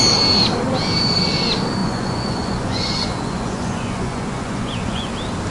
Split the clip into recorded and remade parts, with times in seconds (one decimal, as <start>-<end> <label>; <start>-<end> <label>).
0.0-1.8 recorded; 1.8-5.1 remade; 5.1-5.5 recorded